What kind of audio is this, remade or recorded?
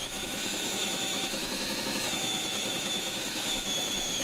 remade